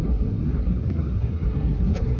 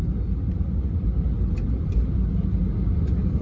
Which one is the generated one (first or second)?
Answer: first